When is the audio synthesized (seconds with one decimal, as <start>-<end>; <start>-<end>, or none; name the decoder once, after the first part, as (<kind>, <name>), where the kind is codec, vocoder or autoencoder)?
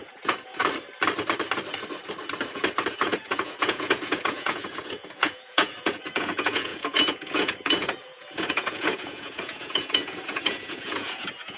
0.0-0.6 (vocoder, Vocos); 2.9-11.6